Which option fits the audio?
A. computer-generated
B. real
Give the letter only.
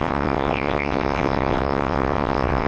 A